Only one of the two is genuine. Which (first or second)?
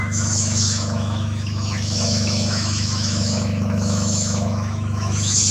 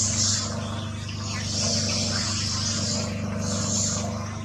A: second